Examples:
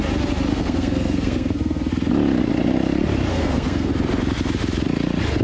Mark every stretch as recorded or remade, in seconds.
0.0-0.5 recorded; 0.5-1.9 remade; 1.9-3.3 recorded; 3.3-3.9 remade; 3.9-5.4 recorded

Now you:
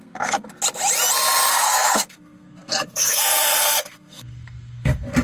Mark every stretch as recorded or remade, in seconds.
0.0-0.5 remade; 0.5-1.5 recorded; 1.5-5.2 remade